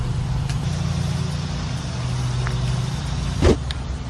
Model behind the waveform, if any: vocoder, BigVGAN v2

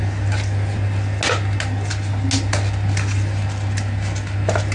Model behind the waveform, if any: none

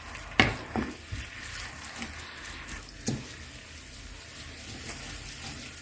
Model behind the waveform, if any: none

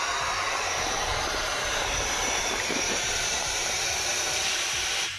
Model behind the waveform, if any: vocoder, BigVGAN v2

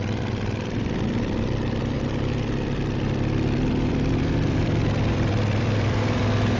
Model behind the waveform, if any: vocoder, BigVGAN v2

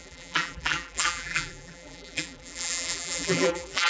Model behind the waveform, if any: vocoder, BigVGAN v2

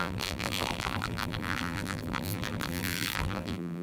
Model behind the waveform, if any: vocoder, BigVGAN v2